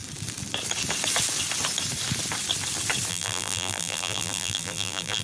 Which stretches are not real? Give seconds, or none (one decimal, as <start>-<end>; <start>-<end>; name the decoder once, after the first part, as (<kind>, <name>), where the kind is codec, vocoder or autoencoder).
3.1-5.2 (vocoder, BigVGAN v2)